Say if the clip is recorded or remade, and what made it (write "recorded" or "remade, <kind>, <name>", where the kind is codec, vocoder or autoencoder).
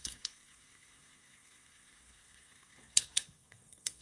remade, codec, SNAC